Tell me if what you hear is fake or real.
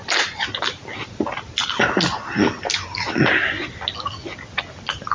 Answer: real